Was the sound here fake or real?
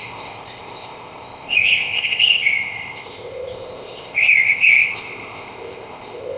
fake